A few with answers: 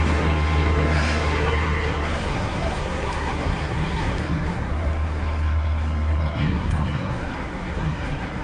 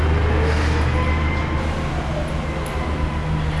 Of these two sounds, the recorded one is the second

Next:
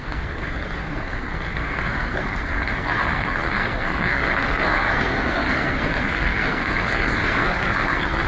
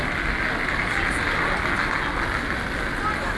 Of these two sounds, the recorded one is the second